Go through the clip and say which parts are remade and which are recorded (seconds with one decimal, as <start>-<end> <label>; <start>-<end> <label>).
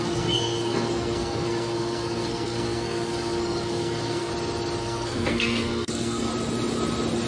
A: 0.0-4.3 remade; 4.3-4.8 recorded; 4.8-6.3 remade; 6.3-7.3 recorded